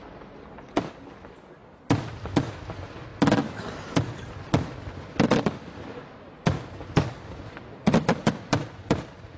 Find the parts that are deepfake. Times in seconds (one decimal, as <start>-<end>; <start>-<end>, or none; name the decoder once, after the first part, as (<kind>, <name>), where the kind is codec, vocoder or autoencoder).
none